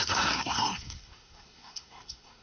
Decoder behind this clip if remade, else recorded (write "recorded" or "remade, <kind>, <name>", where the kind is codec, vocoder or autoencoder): remade, codec, SNAC